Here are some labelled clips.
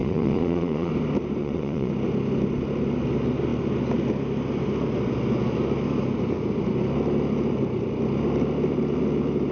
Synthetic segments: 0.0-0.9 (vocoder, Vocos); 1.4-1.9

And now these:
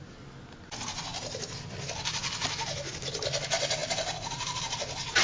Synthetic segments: none

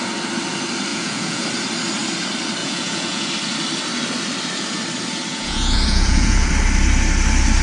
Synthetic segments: 0.9-1.4 (vocoder, Vocos); 2.6-3.3; 5.3-6.5